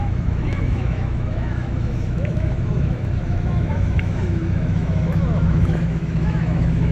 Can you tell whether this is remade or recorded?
remade